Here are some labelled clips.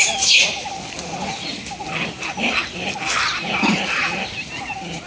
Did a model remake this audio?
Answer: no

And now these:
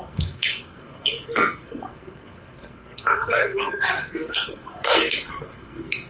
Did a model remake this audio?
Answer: yes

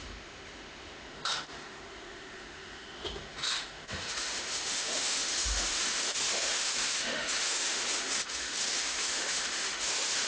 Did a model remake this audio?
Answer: yes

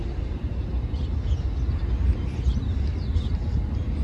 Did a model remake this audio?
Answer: no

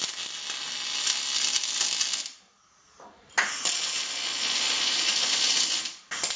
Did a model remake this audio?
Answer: no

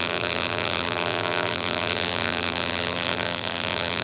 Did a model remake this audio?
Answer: yes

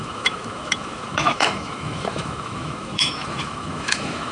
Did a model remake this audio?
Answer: yes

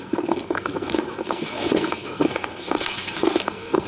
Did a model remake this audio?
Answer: yes